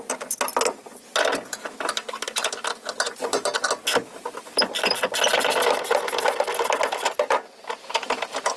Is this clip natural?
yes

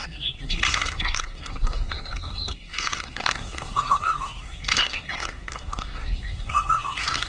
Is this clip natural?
no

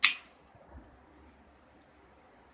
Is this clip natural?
yes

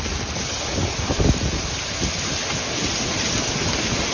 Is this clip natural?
yes